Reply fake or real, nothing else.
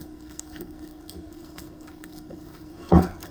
fake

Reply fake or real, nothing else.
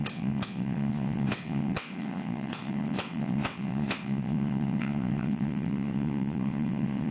fake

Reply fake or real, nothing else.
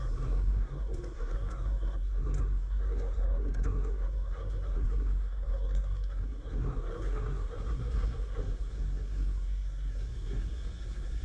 fake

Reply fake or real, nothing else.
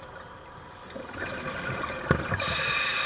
real